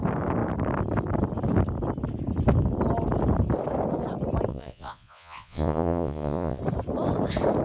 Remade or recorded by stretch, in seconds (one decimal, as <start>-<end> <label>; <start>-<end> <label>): 0.0-4.5 recorded; 4.5-6.6 remade; 6.6-7.6 recorded